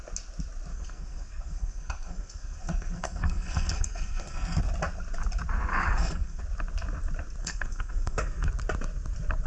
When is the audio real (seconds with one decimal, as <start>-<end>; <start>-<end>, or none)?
0.0-0.7; 4.6-5.7; 6.4-7.4; 8.5-9.5